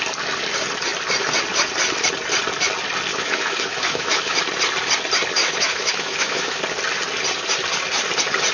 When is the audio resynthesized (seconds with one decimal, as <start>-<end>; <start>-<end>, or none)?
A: 3.1-4.4; 5.4-6.6